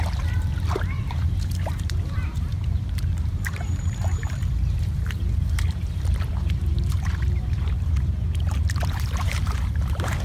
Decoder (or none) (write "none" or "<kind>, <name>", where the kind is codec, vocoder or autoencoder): vocoder, BigVGAN v2